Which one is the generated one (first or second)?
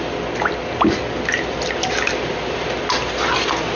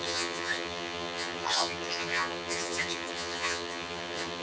second